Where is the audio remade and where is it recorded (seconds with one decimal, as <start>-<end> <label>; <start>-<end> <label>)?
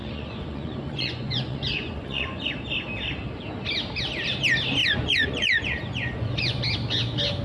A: 0.0-2.5 remade; 2.5-4.8 recorded; 4.8-6.6 remade; 6.6-7.4 recorded